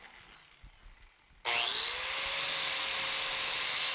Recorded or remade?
recorded